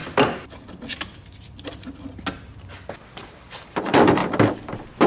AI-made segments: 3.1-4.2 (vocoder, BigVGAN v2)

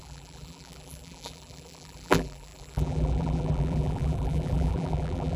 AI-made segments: 0.0-5.4 (vocoder, BigVGAN v2)

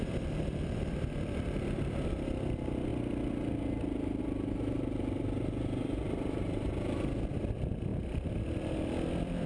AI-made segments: 0.0-2.9 (vocoder, BigVGAN v2); 4.2-9.5

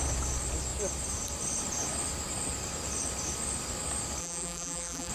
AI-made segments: 4.2-5.1 (vocoder, BigVGAN v2)